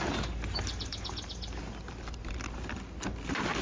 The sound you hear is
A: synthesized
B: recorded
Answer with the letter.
B